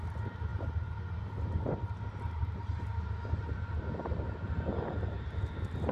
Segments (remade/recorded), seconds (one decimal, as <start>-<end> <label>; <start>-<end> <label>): 0.0-5.9 recorded